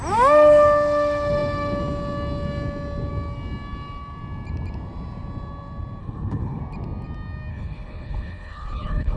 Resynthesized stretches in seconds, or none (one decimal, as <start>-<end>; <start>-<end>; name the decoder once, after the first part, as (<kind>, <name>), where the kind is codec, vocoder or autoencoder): 6.0-6.6 (codec, HILCodec); 7.5-9.2